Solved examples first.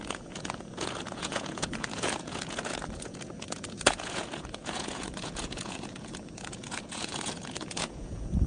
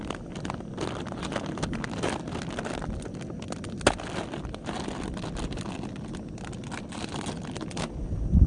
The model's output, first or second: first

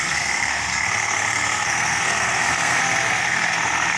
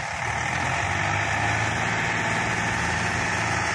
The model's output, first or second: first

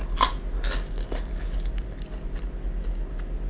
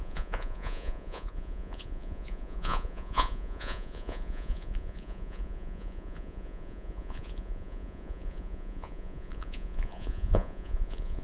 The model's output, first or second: second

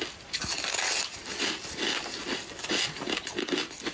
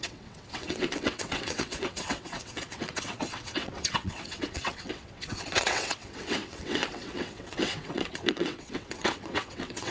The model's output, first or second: second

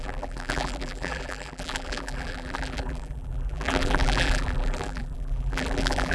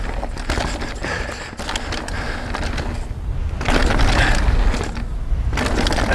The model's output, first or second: first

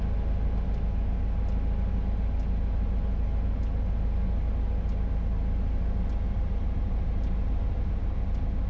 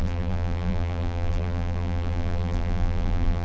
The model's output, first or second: second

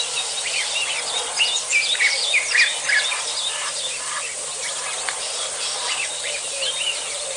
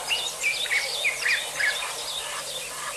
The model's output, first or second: second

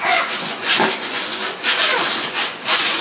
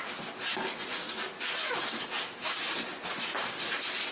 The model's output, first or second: first